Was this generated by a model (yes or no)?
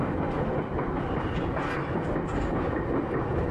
no